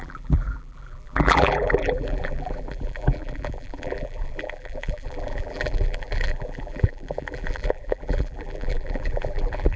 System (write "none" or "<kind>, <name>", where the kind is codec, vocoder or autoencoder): vocoder, BigVGAN v2